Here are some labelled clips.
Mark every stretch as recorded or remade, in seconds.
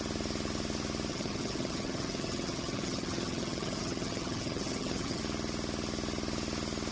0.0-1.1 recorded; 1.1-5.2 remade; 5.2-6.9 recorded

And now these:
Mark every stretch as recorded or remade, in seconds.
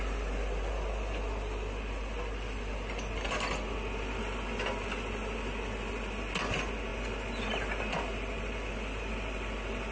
0.0-9.9 recorded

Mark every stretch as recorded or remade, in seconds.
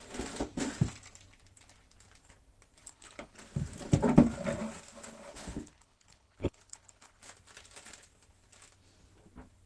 0.0-2.8 recorded; 2.8-3.4 remade; 3.4-5.1 recorded; 5.1-7.2 remade; 7.2-9.7 recorded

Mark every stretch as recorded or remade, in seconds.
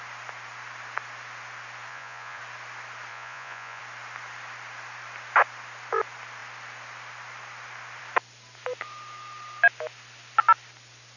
0.0-1.9 recorded; 1.9-2.4 remade; 2.4-3.1 recorded; 3.1-3.8 remade; 3.8-11.2 recorded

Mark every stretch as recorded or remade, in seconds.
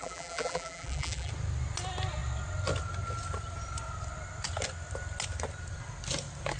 0.0-1.3 remade; 1.3-6.6 recorded